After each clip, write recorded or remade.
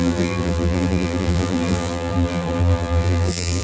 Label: remade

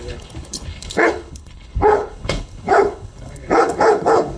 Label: remade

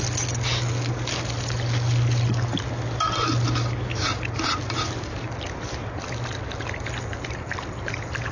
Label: recorded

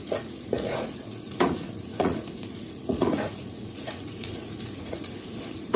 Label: remade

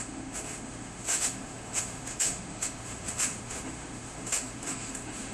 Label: remade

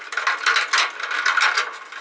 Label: recorded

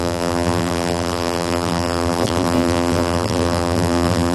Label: remade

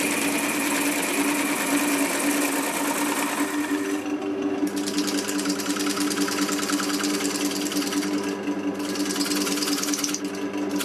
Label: recorded